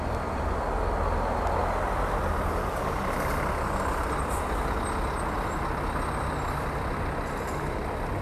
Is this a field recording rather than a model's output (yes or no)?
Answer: yes